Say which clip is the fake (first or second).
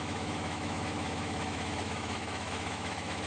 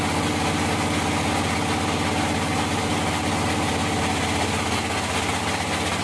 first